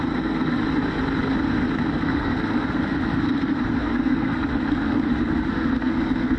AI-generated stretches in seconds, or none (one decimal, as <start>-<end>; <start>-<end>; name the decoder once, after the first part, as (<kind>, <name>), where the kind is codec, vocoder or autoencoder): 0.0-0.6 (codec, SNAC); 1.6-6.4